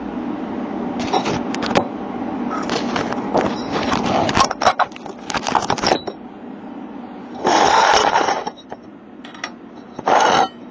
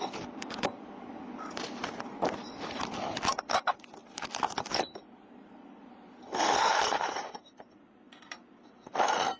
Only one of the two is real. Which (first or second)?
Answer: first